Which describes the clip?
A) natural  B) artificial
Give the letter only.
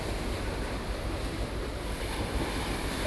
A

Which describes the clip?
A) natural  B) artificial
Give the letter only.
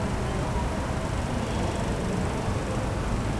A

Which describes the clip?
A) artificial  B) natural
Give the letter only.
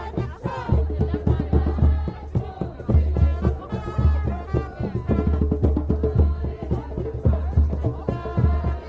B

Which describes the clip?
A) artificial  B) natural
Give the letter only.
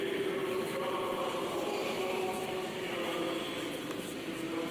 B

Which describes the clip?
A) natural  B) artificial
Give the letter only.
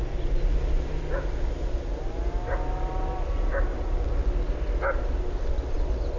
A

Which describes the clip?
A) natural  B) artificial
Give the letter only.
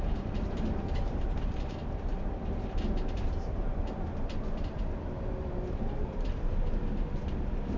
B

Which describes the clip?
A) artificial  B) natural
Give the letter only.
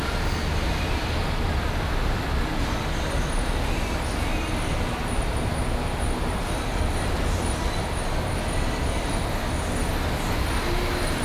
B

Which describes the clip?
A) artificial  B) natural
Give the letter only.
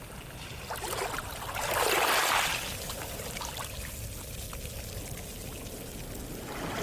B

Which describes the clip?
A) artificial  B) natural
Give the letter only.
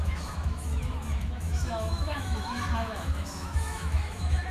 A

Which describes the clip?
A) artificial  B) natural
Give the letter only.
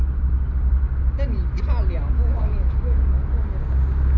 B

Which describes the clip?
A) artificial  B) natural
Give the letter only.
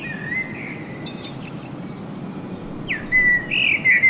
B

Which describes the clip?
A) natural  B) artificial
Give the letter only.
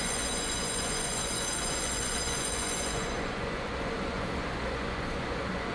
B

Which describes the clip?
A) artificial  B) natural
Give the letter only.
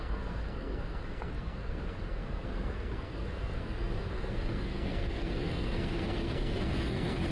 A